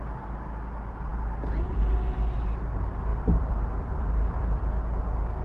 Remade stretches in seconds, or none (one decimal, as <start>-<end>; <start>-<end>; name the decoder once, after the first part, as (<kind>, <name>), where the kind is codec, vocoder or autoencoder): 1.1-1.8 (vocoder, BigVGAN v2); 3.1-4.6